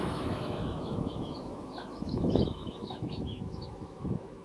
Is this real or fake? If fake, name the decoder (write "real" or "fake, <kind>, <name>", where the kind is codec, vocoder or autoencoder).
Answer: fake, autoencoder, DAC-VAE